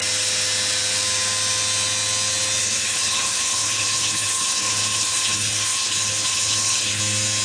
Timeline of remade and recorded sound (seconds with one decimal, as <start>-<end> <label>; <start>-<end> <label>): 0.0-2.6 recorded; 2.6-7.0 remade; 7.0-7.4 recorded